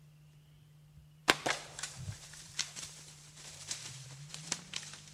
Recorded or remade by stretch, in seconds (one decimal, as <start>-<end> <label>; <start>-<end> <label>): 0.0-1.2 recorded; 1.2-4.3 remade; 4.3-5.1 recorded